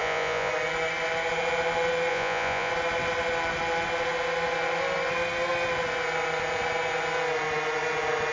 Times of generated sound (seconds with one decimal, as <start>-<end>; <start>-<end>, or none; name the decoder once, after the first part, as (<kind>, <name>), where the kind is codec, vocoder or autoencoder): 0.0-0.5 (vocoder, Vocos); 2.1-2.7